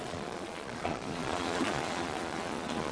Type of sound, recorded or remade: remade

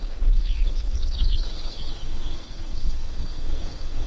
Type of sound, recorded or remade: remade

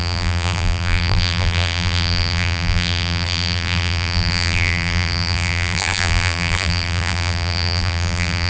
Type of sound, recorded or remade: remade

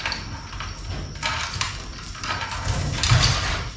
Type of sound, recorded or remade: recorded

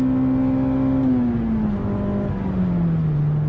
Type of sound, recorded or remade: recorded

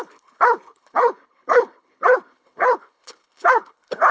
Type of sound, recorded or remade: remade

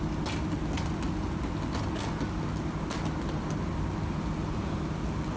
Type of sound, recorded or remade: recorded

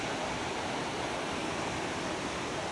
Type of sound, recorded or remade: recorded